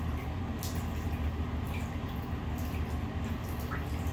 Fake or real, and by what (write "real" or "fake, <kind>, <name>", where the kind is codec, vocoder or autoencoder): real